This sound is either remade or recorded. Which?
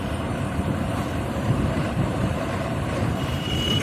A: remade